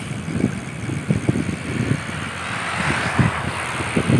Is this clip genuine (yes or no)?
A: yes